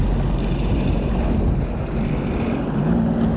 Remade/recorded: recorded